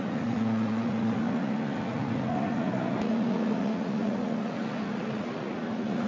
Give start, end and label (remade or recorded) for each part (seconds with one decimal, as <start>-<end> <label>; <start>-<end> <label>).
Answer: 0.0-6.1 remade